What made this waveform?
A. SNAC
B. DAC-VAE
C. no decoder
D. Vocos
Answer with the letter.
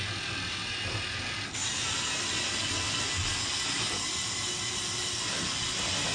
C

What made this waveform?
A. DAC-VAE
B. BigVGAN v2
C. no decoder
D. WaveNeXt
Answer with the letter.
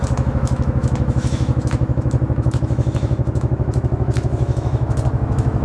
A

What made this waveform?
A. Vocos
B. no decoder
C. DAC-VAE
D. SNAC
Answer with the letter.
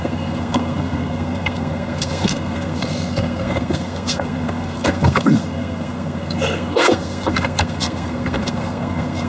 D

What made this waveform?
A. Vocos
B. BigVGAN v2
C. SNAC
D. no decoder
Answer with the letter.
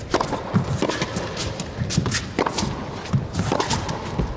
D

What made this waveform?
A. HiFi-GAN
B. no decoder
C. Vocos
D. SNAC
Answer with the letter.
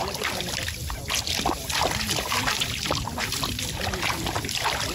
B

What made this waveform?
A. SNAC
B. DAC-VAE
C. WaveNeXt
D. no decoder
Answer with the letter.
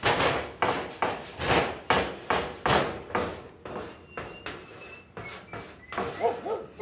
D